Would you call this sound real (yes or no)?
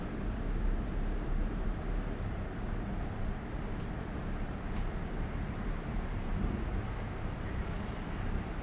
no